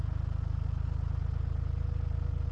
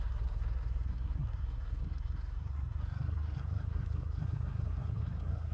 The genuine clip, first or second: first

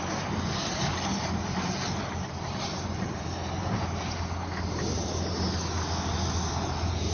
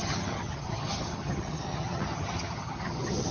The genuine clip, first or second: first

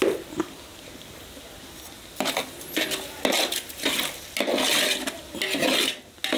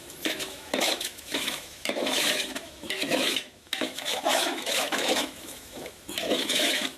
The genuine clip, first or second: first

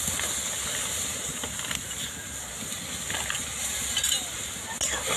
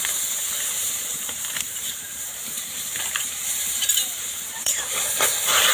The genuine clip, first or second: first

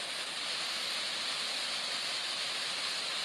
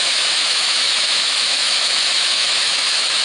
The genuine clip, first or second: first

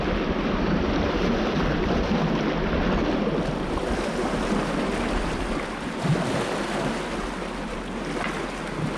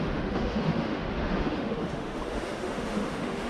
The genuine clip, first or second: first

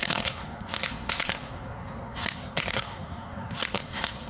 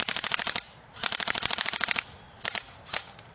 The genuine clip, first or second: second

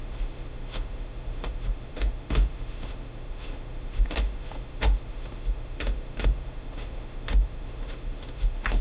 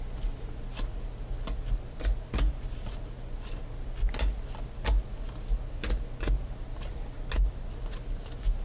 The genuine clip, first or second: second